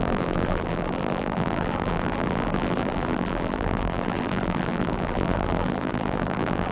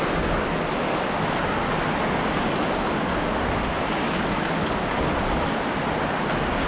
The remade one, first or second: first